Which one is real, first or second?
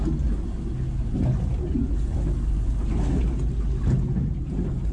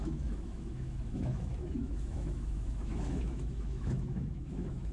first